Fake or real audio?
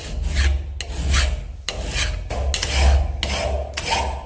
real